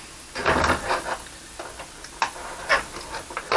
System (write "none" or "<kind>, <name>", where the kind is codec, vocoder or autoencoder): none